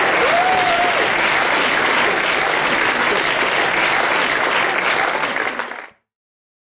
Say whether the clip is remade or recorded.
recorded